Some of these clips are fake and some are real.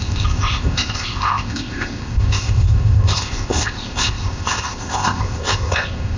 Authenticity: fake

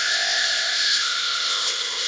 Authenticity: fake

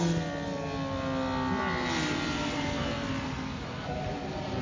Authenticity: real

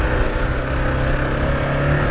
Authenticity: real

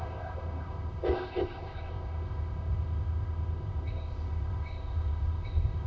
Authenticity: fake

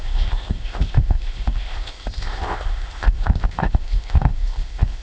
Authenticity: fake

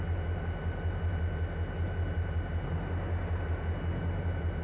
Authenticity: real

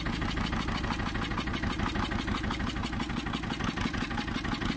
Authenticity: real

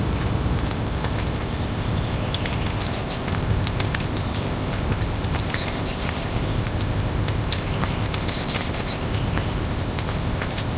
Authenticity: fake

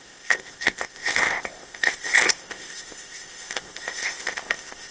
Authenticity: fake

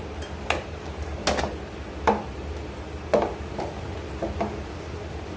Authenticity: real